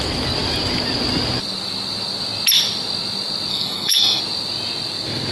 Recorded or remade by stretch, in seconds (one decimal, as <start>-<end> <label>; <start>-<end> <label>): 0.0-3.5 recorded; 3.5-4.2 remade; 4.2-5.3 recorded

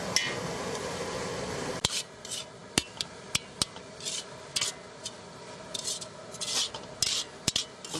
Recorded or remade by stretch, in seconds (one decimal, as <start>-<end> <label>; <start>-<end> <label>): 0.0-8.0 recorded

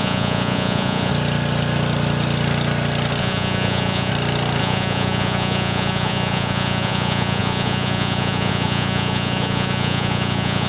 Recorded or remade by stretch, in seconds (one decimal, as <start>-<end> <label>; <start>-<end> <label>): 0.0-1.1 remade; 1.1-3.2 recorded; 3.2-4.1 remade; 4.1-4.6 recorded; 4.6-10.7 remade